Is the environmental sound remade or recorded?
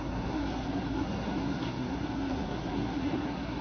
remade